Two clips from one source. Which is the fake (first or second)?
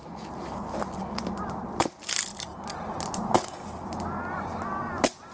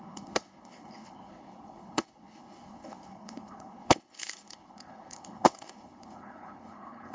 second